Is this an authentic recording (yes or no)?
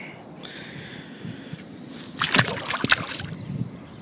yes